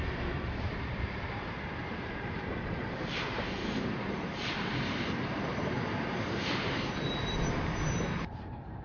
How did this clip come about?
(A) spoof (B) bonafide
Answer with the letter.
A